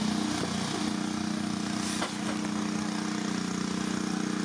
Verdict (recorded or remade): recorded